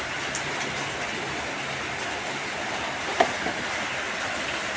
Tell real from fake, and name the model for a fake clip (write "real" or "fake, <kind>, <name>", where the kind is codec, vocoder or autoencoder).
real